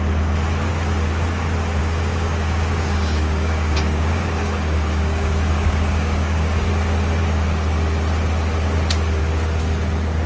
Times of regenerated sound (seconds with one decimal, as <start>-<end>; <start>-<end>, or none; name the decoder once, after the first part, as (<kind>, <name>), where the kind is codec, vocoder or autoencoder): 1.8-6.7 (codec, DAC)